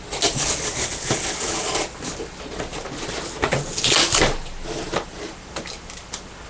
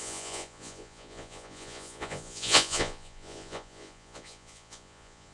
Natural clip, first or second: first